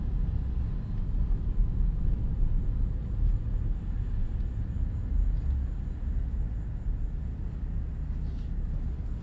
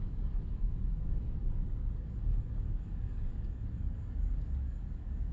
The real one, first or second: first